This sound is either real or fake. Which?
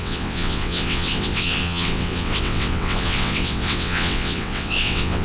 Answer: fake